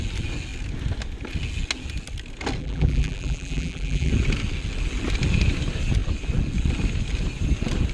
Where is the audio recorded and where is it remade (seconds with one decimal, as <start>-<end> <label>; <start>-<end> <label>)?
0.0-2.6 recorded; 2.6-4.1 remade; 4.1-7.9 recorded